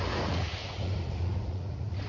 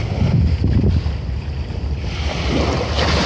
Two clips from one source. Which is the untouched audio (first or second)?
second